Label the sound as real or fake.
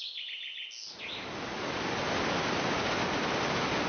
real